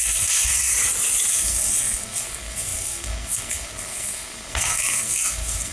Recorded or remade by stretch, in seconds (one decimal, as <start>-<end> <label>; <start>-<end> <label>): 0.0-0.7 remade; 0.7-1.3 recorded; 1.3-5.7 remade

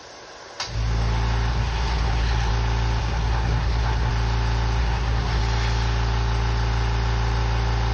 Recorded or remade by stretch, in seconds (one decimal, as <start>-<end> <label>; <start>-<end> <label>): 0.0-1.5 recorded; 1.5-2.5 remade; 2.5-3.0 recorded; 3.0-4.1 remade; 4.1-4.8 recorded; 4.8-5.4 remade; 5.4-7.9 recorded

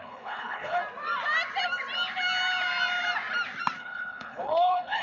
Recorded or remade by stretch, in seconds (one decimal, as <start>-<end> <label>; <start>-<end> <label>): 0.0-0.8 remade; 0.8-3.8 recorded; 3.8-5.0 remade

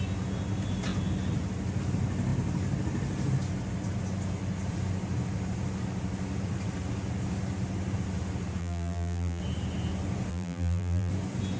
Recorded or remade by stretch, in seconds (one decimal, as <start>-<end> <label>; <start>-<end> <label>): 0.0-8.6 recorded; 8.6-9.4 remade; 9.4-10.3 recorded; 10.3-11.1 remade; 11.1-11.6 recorded

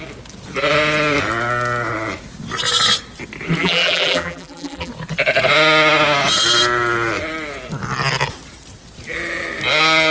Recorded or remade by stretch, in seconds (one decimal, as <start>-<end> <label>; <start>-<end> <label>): 0.0-3.6 recorded; 3.6-4.9 remade; 4.9-10.1 recorded